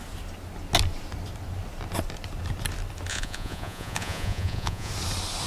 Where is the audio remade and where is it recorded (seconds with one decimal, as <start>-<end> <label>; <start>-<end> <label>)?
0.0-3.1 recorded; 3.1-4.9 remade; 4.9-5.5 recorded